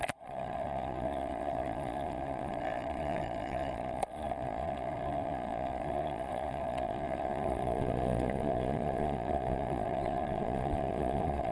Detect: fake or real fake